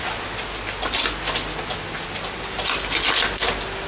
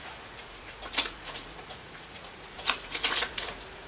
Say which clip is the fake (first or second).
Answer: second